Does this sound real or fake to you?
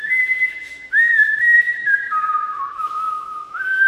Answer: fake